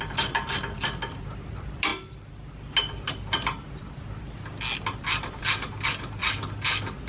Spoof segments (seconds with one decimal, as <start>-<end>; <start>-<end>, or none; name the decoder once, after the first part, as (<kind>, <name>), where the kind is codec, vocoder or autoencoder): none